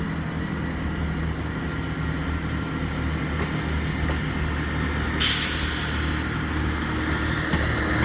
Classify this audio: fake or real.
real